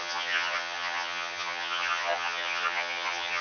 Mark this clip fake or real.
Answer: fake